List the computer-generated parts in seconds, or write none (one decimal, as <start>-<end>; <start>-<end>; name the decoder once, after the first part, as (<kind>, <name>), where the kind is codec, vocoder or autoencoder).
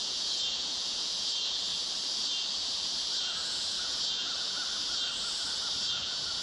0.0-1.7 (vocoder, Vocos); 3.2-4.6; 5.9-6.4